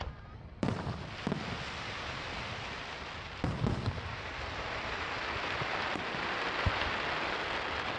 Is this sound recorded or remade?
remade